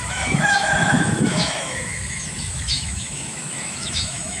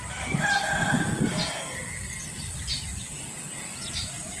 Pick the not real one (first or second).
first